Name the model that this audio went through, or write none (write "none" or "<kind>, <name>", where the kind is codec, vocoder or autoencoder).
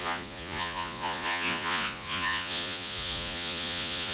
vocoder, Vocos